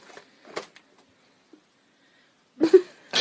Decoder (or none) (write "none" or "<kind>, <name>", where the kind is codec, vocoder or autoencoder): none